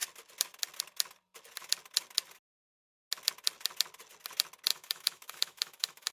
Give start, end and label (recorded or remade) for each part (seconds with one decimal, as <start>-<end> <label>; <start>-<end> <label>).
0.0-4.7 recorded; 4.7-6.1 remade